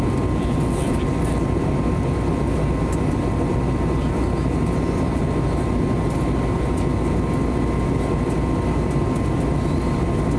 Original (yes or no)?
yes